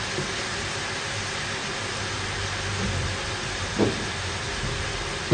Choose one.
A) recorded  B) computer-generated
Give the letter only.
A